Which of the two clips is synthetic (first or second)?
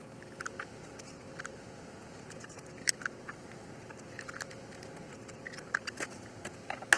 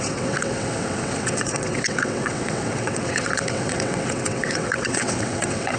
second